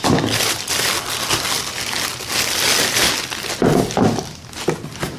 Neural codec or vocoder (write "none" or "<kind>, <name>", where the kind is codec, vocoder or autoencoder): none